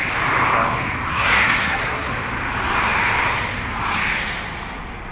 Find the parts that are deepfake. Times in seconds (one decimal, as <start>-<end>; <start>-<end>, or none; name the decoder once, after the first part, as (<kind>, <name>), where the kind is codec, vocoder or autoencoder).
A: 1.1-2.1 (codec, SNAC)